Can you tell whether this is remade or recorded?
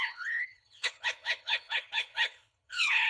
remade